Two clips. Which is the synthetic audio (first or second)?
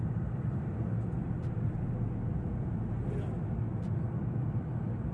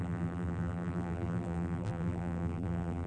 second